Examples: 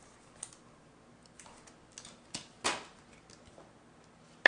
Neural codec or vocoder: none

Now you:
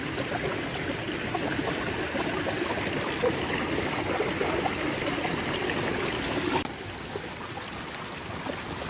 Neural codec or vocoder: none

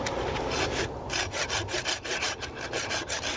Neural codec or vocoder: none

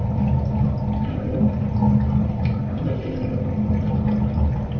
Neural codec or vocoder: none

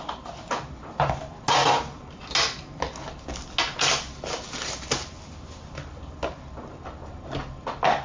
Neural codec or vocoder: none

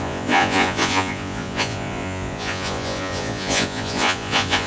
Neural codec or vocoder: vocoder, Vocos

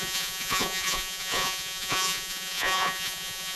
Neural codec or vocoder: vocoder, Vocos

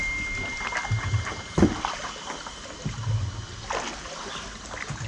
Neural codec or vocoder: none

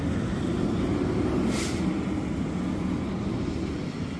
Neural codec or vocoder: none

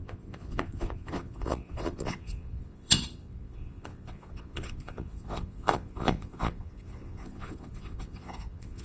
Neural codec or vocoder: vocoder, Vocos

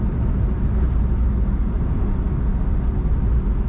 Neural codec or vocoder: none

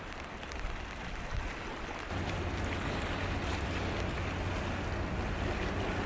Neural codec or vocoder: none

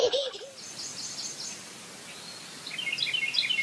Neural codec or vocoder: none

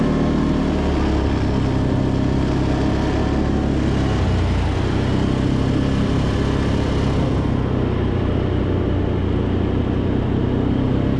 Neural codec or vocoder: none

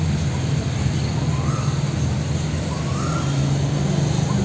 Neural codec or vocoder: none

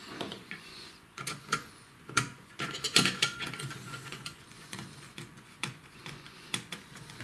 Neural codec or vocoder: vocoder, Vocos